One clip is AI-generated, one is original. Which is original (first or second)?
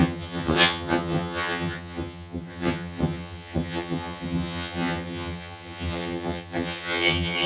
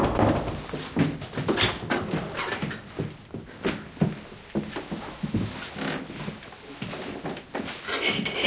second